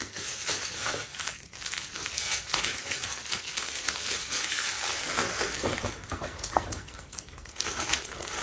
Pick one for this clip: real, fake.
fake